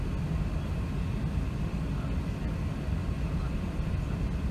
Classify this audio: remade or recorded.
recorded